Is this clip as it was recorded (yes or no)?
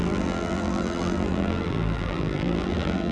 no